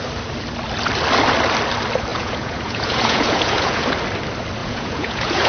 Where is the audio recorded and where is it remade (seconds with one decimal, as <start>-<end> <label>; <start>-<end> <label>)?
0.0-2.1 recorded; 2.1-3.9 remade; 3.9-4.6 recorded; 4.6-5.5 remade